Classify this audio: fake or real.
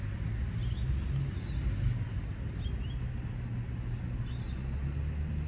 real